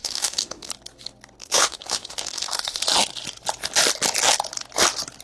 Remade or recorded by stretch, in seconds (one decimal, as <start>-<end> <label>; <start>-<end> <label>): 0.0-0.7 remade; 0.7-1.4 recorded; 1.4-2.8 remade; 2.8-5.2 recorded